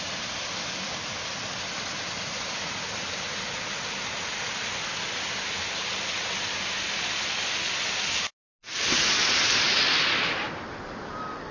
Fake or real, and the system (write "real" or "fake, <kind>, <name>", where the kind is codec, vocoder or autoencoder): real